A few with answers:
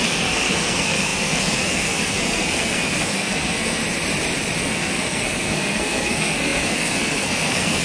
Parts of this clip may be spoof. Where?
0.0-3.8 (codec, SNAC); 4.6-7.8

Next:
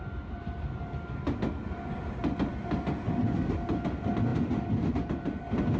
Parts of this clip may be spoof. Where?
none

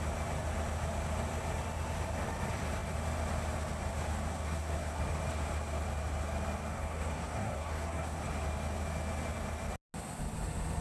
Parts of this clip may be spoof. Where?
4.3-5.0 (codec, SNAC); 6.7-8.2

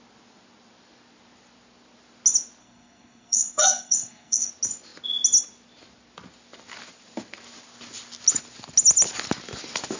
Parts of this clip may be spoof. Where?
2.6-4.5 (codec, SNAC)

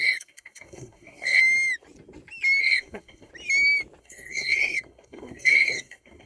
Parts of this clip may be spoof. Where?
0.0-1.4 (codec, SNAC); 2.6-3.3; 4.0-6.3

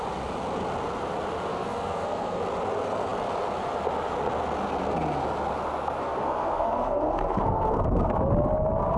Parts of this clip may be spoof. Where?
1.5-2.4 (codec, SNAC); 6.0-8.1

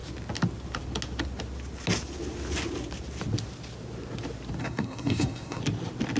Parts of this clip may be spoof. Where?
4.6-5.6 (codec, SNAC)

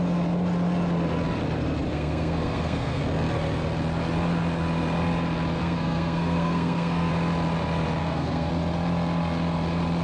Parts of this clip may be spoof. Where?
1.9-3.0 (codec, SNAC); 5.6-7.1; 8.0-8.5